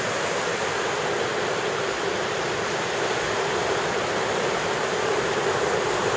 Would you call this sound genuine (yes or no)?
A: yes